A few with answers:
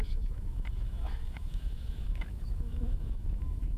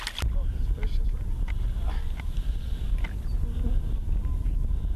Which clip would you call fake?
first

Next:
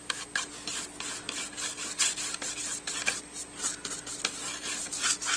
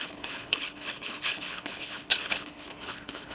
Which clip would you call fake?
second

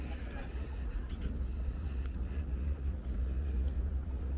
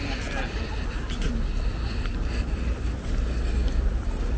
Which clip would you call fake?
first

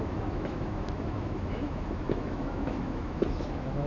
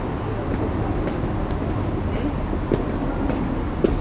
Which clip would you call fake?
first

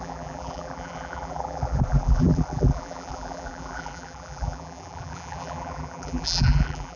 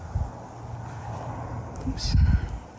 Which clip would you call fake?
first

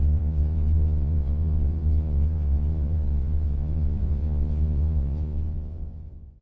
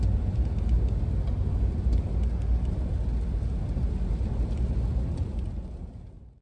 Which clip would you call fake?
first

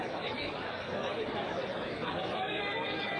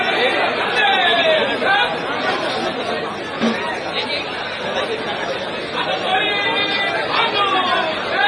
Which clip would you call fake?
first